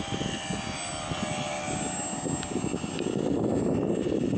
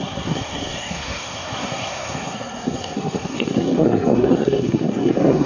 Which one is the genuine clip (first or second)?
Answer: first